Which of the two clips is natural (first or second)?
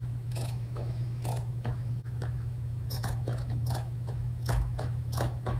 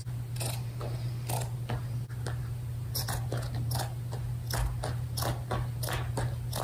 second